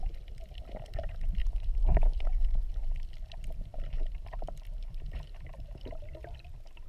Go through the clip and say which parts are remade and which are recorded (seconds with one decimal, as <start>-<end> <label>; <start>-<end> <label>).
0.0-1.4 recorded; 1.4-2.7 remade; 2.7-3.7 recorded; 3.7-5.8 remade; 5.8-6.9 recorded